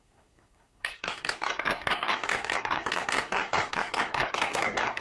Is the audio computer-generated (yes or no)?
yes